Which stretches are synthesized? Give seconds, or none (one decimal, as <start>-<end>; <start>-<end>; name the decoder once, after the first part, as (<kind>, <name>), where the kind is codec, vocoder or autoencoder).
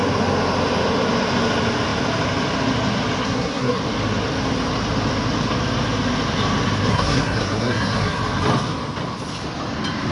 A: 3.2-3.8 (codec, SNAC); 6.9-8.2